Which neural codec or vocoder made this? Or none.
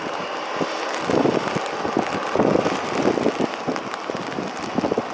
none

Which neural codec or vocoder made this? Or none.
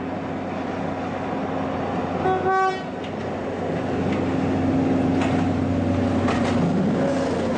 none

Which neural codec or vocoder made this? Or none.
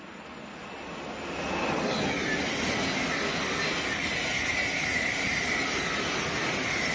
none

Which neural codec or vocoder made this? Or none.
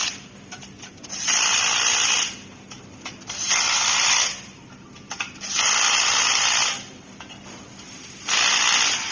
none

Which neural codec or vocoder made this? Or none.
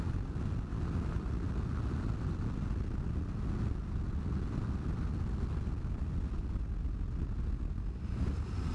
none